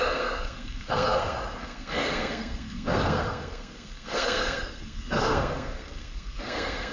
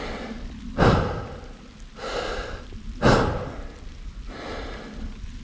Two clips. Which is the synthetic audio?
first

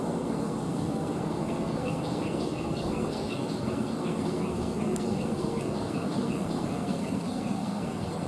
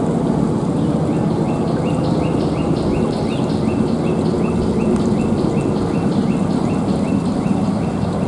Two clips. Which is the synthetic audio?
first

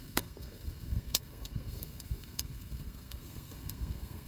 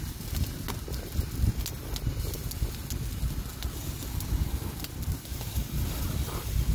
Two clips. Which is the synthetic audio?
first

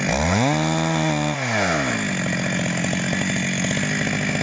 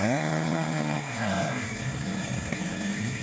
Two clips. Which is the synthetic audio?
second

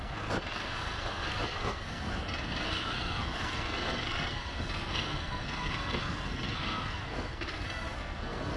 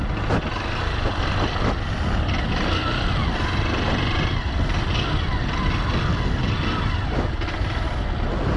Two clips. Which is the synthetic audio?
first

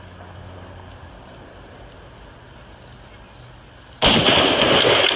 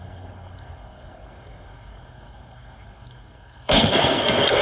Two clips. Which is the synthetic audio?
second